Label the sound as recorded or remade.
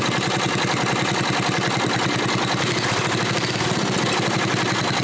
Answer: recorded